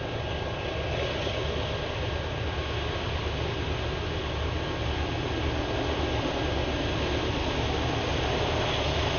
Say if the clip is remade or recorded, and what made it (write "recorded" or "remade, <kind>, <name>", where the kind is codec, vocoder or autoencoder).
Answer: recorded